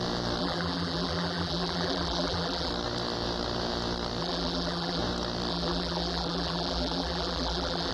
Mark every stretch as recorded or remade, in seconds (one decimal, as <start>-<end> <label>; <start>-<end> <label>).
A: 0.0-0.4 recorded; 0.4-2.7 remade; 2.7-4.2 recorded; 4.2-5.0 remade; 5.0-5.5 recorded; 5.5-7.9 remade